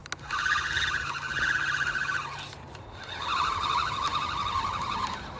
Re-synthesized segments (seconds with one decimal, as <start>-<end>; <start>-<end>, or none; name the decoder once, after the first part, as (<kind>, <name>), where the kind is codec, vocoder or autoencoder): none